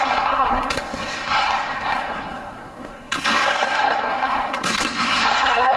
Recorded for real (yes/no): no